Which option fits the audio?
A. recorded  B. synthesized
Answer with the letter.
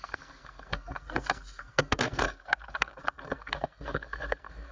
B